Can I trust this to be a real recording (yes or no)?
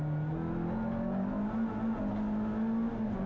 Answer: yes